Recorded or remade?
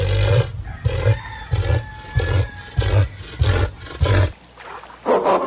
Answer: recorded